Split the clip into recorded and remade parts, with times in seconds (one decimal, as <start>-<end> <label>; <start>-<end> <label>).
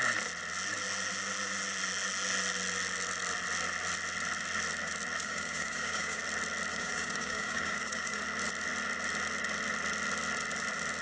0.0-5.2 recorded; 5.2-6.2 remade; 6.2-6.7 recorded; 6.7-8.2 remade; 8.2-11.0 recorded